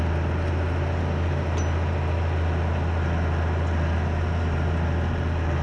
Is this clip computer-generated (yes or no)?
no